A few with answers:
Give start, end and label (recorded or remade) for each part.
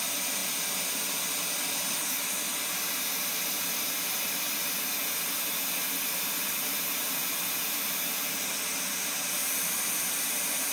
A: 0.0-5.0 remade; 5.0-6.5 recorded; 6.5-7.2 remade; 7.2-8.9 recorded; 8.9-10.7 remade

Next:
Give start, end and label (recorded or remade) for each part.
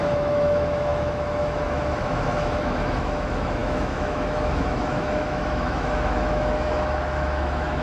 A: 0.0-7.8 remade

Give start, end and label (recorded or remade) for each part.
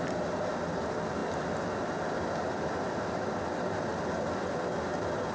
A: 0.0-5.3 recorded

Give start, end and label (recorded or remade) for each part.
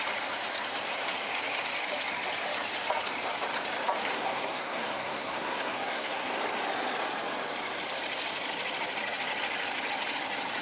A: 0.0-4.1 recorded; 4.1-6.3 remade; 6.3-10.6 recorded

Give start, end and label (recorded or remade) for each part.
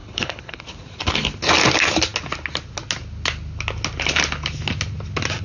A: 0.0-0.6 remade; 0.6-5.4 recorded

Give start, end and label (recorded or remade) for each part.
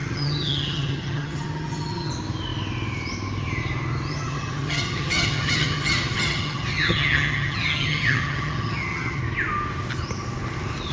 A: 0.0-2.1 remade; 2.1-4.1 recorded; 4.1-9.2 remade; 9.2-10.9 recorded